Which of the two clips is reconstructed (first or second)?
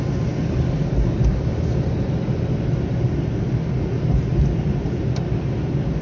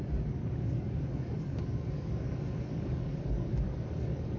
second